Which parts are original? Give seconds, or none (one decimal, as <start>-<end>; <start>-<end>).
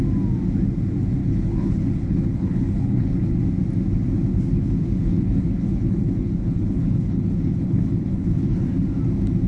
0.0-1.2; 3.4-4.3; 8.7-9.5